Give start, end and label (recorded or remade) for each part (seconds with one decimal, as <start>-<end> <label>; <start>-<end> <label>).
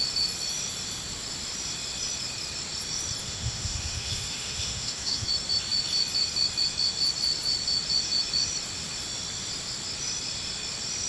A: 0.0-3.2 recorded; 3.2-5.3 remade; 5.3-11.1 recorded